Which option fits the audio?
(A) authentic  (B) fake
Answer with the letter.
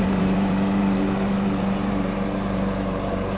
B